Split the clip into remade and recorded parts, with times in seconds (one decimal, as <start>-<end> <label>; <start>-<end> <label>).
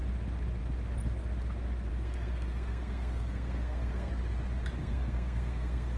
0.0-1.9 recorded; 1.9-4.1 remade; 4.1-4.8 recorded; 4.8-6.0 remade